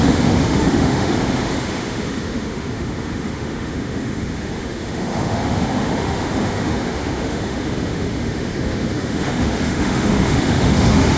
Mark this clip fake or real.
fake